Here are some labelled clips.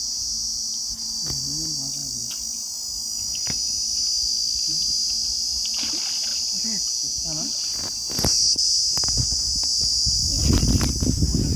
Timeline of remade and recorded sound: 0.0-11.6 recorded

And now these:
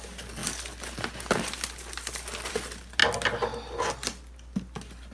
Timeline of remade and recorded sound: 0.0-5.1 recorded

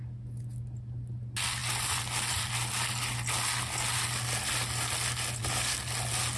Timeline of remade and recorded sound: 0.0-6.4 recorded